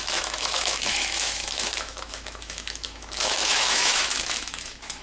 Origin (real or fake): fake